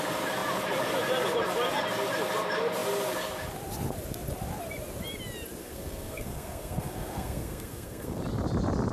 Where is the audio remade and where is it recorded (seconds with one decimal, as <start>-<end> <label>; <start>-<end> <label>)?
0.0-5.6 recorded; 5.6-8.2 remade; 8.2-8.9 recorded